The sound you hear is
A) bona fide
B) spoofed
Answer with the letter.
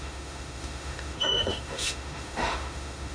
B